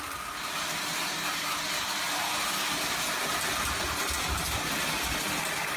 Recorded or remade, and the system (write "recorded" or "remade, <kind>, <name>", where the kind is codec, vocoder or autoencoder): recorded